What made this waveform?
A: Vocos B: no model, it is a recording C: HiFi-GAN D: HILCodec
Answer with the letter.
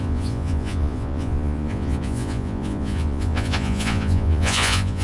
A